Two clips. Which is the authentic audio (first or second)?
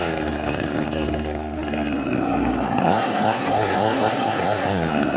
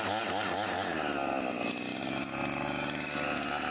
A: second